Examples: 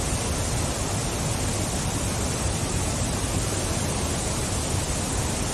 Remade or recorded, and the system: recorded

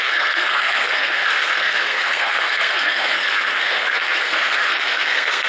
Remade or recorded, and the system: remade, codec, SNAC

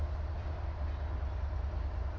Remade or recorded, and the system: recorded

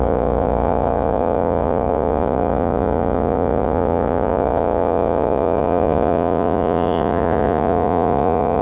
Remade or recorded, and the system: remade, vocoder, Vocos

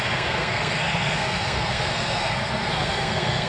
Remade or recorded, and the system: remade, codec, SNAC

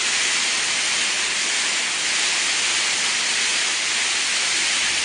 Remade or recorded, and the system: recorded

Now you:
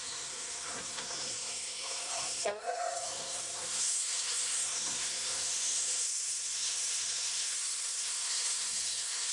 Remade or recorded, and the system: remade, codec, SNAC